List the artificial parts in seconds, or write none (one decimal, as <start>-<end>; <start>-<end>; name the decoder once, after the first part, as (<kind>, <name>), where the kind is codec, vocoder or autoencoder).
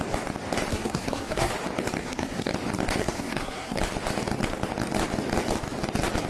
0.7-1.5 (codec, SNAC); 2.0-2.5; 3.0-3.8